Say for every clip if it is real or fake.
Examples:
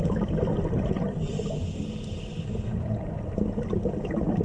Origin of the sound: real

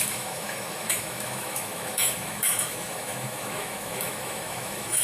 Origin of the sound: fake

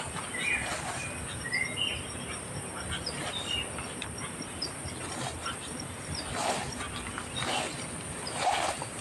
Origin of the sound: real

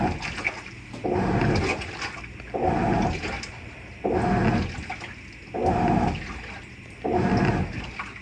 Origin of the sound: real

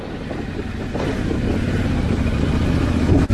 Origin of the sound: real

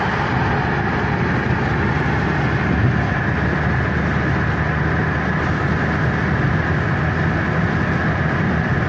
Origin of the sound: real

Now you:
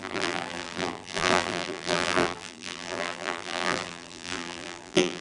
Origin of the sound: fake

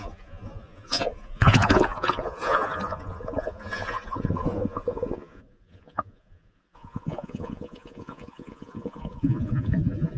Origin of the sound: fake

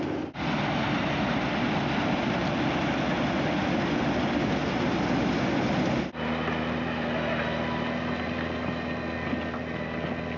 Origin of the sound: real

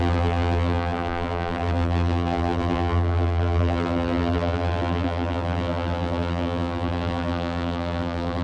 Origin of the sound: fake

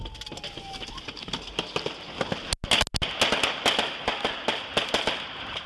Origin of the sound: real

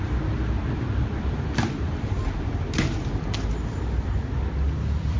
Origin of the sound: real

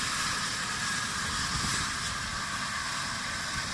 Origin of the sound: real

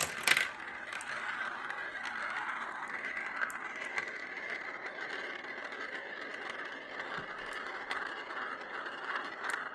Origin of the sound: real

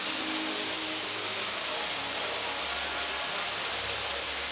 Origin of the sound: real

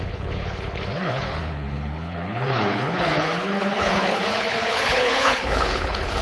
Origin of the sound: fake